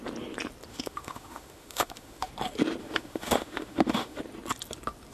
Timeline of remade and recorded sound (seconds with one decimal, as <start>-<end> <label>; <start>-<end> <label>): 0.0-0.7 recorded; 0.7-2.3 remade; 2.3-2.8 recorded; 2.8-4.2 remade; 4.2-5.1 recorded